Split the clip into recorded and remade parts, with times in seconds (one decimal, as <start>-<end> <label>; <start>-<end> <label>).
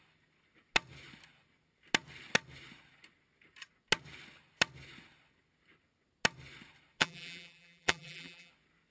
0.0-7.0 recorded; 7.0-8.5 remade; 8.5-8.9 recorded